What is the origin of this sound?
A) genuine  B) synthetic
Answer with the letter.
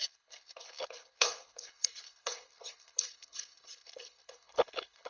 B